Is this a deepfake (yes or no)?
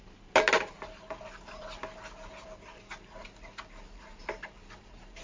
no